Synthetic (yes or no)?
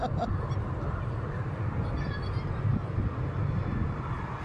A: no